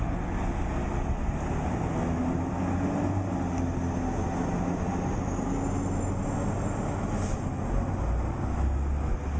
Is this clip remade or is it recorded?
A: recorded